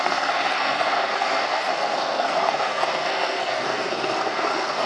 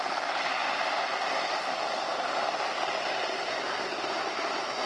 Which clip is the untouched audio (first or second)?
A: second